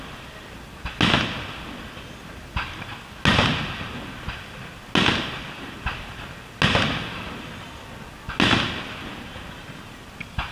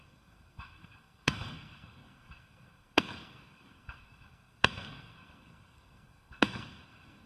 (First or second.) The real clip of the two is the first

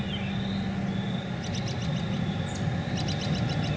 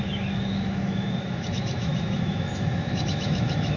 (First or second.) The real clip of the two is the first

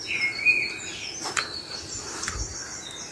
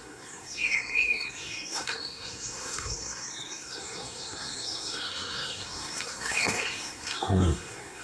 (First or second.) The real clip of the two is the first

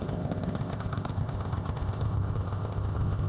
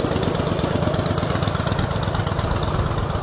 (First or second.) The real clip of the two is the second